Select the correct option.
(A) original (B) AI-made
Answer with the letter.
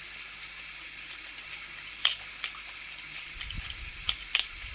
A